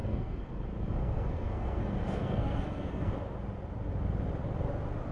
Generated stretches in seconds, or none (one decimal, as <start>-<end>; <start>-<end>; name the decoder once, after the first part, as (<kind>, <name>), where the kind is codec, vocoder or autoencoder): 0.0-0.6 (codec, SNAC); 1.0-3.1